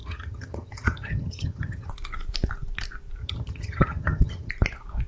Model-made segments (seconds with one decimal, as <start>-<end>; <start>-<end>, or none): 0.0-1.9; 3.2-4.5

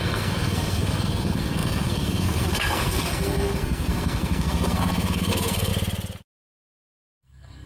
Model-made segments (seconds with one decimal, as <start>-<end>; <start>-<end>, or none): 0.0-5.7; 7.0-7.7

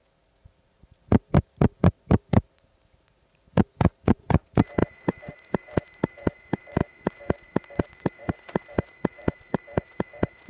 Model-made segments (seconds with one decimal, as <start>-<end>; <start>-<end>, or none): 0.0-10.5

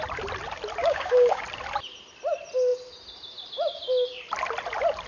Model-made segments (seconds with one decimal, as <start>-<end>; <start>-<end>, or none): 0.8-1.4